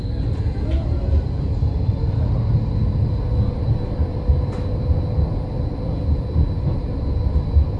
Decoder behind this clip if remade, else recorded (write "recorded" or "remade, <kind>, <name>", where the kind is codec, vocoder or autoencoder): recorded